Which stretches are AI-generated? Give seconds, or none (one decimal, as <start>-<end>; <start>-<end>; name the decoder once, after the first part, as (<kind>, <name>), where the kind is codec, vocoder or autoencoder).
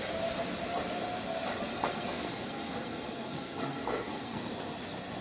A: 1.7-4.5 (codec, SNAC)